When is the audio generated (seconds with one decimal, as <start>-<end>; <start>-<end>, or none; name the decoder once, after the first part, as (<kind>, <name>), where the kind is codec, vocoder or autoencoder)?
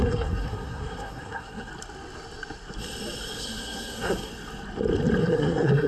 0.0-1.7 (codec, SNAC); 3.4-4.3; 5.2-5.9